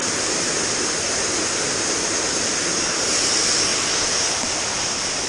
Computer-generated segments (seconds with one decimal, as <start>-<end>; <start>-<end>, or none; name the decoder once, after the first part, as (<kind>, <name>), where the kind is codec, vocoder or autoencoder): 0.0-3.2 (vocoder, BigVGAN v2)